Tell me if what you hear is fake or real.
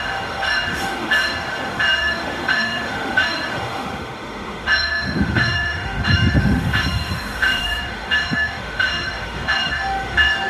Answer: fake